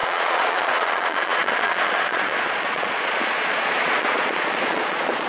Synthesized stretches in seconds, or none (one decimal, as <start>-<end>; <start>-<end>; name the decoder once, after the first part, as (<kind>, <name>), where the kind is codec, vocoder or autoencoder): 0.0-5.3 (vocoder, Vocos)